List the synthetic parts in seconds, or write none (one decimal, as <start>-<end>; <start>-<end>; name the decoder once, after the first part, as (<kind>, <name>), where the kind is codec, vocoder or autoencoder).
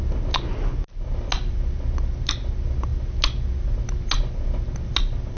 none